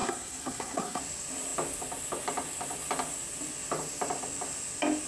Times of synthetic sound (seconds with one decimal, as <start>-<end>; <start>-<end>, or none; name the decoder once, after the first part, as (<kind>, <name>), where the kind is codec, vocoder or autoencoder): 0.0-1.0 (codec, SNAC)